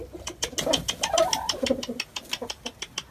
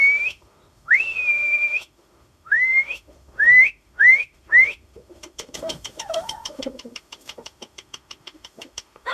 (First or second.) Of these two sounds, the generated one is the second